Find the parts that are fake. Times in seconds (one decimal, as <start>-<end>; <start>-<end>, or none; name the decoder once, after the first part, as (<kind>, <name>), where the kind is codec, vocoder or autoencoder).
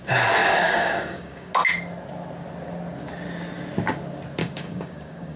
0.4-1.5 (codec, DAC); 4.4-5.4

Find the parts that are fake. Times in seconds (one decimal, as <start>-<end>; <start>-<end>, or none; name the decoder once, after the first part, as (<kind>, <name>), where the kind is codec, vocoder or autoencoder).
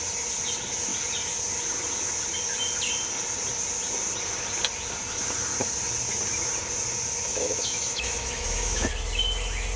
7.3-8.9 (autoencoder, DAC-VAE)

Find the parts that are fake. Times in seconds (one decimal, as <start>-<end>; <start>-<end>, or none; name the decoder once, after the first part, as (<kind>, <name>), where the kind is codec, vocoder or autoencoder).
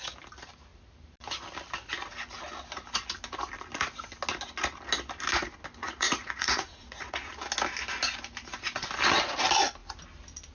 5.8-7.3 (vocoder, Vocos)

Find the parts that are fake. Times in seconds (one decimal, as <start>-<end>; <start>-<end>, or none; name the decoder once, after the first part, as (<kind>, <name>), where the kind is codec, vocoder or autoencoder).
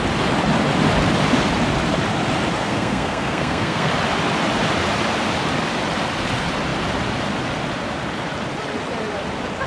2.6-3.9 (codec, SNAC)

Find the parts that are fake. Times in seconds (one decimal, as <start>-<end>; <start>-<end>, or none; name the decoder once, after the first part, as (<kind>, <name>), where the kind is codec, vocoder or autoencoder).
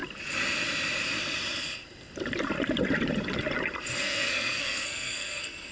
4.0-5.7 (codec, SNAC)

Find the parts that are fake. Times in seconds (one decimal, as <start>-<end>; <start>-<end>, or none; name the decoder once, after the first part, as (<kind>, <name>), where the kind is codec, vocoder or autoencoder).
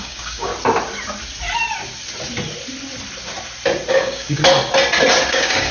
0.0-0.5 (codec, DAC); 3.9-4.4; 5.3-5.7